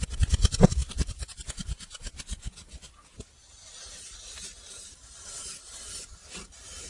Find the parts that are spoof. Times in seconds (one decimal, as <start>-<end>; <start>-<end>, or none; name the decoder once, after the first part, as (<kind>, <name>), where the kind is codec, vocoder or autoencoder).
none